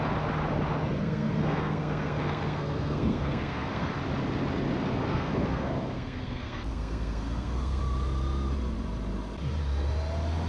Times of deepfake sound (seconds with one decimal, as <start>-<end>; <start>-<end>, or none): 1.0-3.9; 5.1-7.8